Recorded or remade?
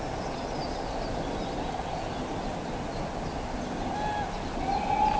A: recorded